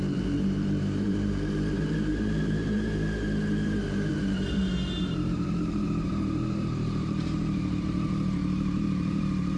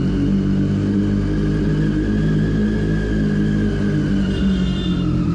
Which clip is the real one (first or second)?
second